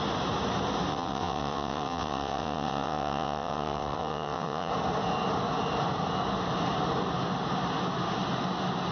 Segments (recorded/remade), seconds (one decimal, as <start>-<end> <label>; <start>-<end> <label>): 0.0-0.9 recorded; 0.9-4.7 remade; 4.7-8.9 recorded